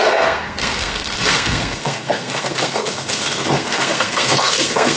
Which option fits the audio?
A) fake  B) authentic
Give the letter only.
A